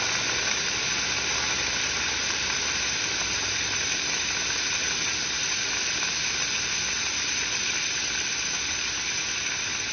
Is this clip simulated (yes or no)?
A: no